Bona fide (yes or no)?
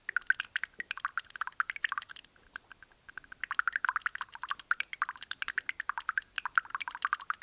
yes